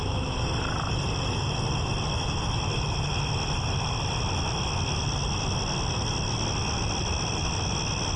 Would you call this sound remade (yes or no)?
no